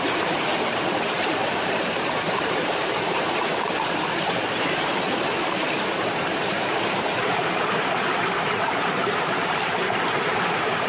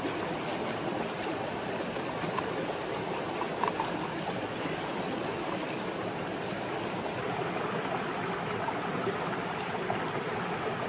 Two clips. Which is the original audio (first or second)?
second